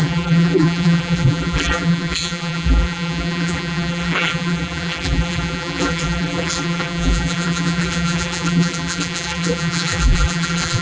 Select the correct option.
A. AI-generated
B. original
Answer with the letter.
A